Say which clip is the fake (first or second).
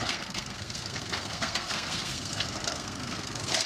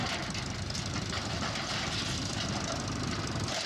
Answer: first